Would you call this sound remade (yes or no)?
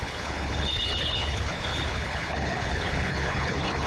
yes